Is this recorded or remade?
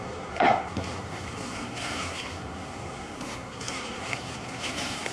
remade